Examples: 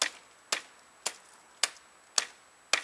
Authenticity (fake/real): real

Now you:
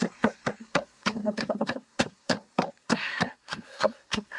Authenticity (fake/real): fake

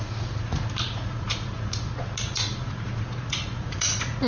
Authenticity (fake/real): fake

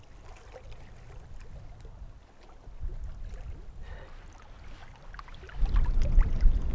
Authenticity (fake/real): real